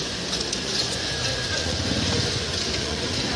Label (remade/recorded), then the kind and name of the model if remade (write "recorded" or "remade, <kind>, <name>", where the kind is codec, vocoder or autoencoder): remade, vocoder, Vocos